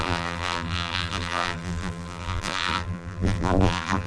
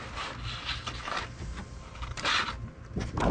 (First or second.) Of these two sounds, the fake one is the first